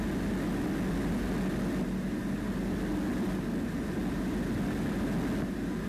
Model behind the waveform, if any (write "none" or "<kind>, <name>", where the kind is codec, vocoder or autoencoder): none